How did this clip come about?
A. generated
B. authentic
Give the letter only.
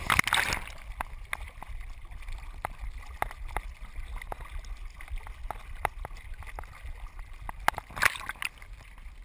B